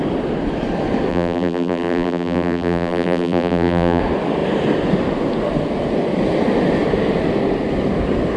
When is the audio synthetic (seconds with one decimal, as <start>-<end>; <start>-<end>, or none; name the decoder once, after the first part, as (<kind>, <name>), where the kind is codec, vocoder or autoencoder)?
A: 1.1-4.0 (vocoder, BigVGAN v2)